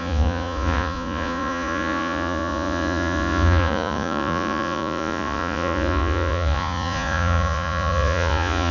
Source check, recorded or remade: remade